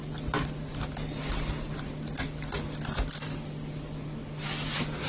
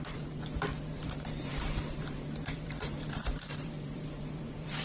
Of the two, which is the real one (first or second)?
first